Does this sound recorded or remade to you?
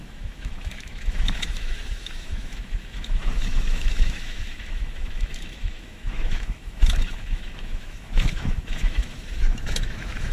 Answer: remade